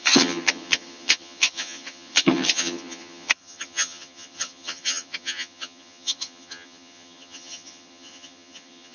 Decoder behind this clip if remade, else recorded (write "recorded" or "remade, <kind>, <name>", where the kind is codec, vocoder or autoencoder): remade, vocoder, HiFi-GAN